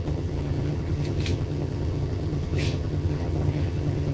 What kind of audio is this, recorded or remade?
remade